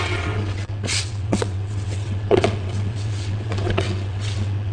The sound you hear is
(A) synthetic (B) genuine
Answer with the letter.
A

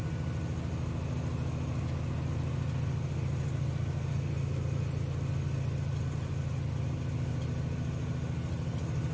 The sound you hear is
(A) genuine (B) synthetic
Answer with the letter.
A